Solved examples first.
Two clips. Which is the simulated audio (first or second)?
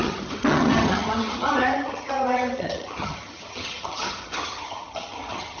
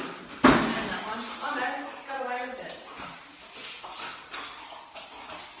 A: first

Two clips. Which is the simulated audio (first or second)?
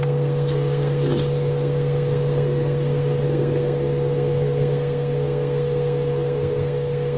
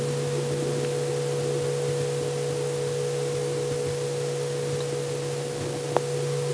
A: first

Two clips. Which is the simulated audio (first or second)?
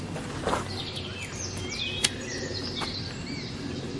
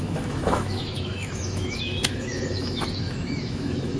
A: second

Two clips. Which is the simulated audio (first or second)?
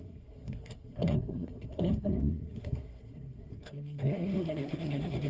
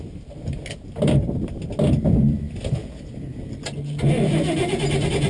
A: first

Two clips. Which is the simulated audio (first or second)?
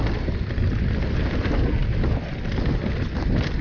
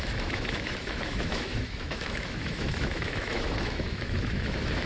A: second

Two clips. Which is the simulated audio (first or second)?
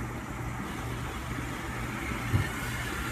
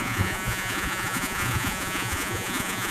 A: second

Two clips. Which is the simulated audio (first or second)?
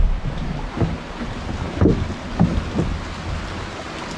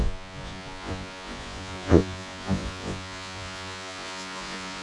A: second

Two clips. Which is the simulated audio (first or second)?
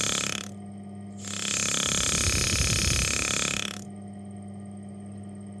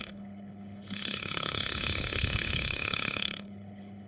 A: second